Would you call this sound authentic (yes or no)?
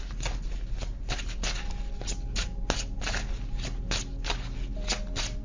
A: yes